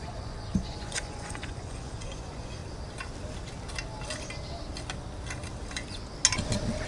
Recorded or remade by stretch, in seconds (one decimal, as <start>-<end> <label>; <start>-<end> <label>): 0.0-2.6 remade; 2.6-6.9 recorded